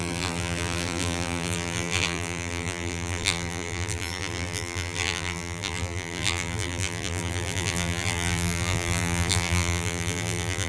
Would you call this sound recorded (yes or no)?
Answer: no